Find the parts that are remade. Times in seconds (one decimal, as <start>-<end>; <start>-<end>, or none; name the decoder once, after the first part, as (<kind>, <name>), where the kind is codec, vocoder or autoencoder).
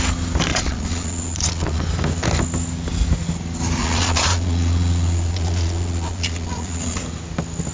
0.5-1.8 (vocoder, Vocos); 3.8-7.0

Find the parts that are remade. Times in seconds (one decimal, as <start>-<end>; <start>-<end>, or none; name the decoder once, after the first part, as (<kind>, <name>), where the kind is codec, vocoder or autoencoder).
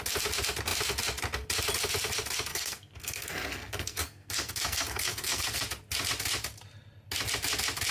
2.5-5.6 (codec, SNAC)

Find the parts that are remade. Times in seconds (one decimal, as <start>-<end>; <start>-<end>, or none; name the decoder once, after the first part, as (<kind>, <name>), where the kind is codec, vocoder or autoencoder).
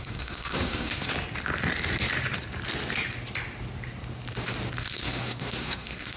0.0-1.1 (codec, SNAC); 4.8-6.2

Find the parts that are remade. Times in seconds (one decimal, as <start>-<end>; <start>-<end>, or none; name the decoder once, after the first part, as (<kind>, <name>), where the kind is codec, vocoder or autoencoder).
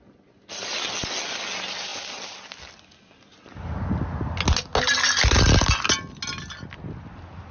none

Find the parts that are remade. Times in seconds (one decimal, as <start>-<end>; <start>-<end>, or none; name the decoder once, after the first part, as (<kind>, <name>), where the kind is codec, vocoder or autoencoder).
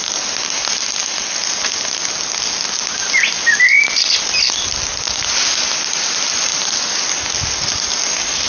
none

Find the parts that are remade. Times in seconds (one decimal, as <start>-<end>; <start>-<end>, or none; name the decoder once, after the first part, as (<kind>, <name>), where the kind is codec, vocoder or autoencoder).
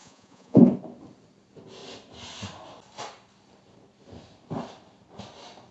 0.0-0.7 (vocoder, Vocos)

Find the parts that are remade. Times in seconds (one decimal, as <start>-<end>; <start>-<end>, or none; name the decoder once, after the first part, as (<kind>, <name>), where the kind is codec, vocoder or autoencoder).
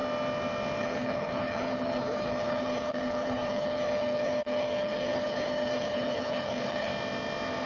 0.8-6.9 (codec, HILCodec)